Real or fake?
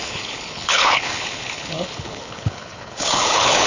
fake